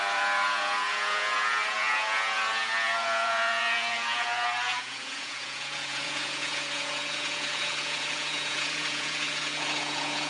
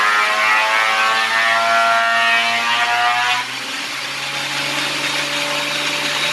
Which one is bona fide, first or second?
second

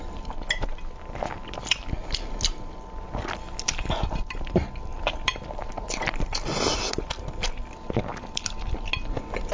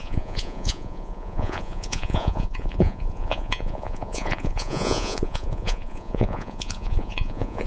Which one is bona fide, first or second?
first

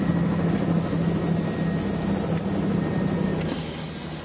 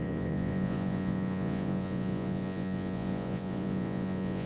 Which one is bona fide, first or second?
first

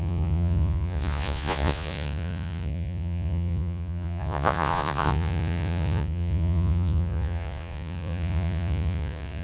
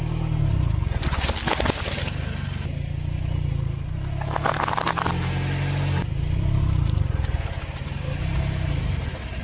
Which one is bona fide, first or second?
second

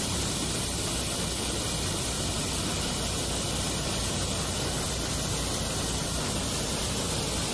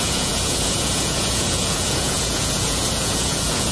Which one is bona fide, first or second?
first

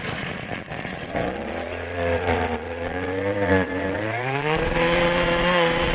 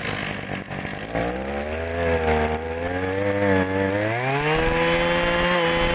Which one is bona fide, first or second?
second